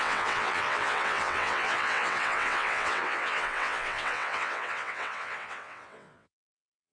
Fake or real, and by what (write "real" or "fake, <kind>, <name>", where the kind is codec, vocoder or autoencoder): fake, vocoder, WaveNeXt